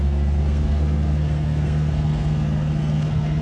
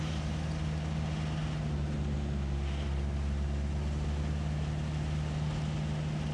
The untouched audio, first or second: second